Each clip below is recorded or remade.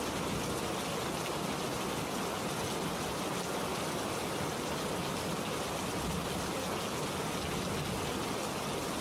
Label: recorded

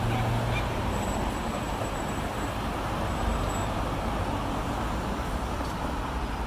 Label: recorded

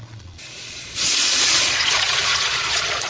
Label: remade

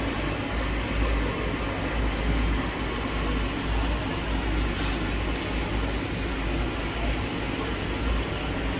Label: recorded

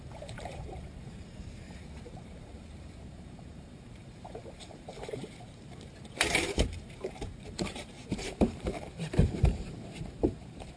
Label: remade